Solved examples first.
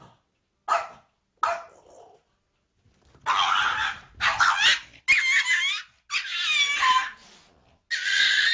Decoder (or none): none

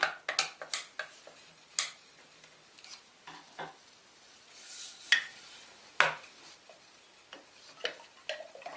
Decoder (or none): none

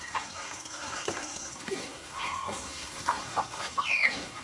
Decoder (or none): codec, SNAC